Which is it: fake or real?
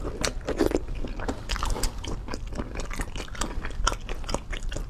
fake